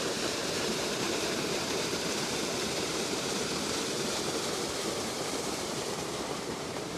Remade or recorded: remade